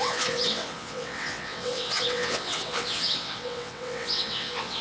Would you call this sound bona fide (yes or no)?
no